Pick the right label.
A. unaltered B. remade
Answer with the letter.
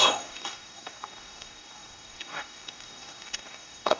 B